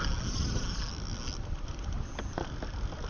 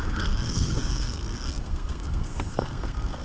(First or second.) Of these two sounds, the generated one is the second